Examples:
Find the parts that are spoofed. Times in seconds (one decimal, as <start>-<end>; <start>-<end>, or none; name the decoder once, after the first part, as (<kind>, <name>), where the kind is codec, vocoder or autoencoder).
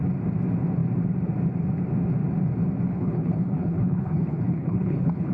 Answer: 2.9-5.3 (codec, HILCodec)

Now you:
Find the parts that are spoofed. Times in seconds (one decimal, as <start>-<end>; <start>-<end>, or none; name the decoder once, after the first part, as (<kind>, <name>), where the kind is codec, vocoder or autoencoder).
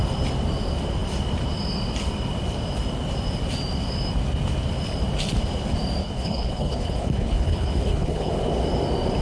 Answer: 6.0-8.3 (codec, HILCodec)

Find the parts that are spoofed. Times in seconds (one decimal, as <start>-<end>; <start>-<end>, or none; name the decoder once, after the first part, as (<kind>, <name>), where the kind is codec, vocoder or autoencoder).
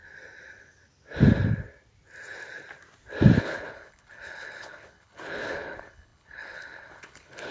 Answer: 3.4-7.5 (codec, HILCodec)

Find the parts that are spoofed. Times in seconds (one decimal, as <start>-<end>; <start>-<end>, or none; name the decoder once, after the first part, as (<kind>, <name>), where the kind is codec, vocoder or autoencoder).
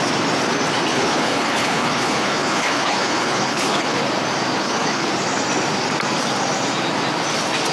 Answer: 0.9-4.0 (codec, HILCodec); 4.6-5.1